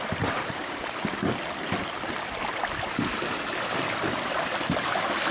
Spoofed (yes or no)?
no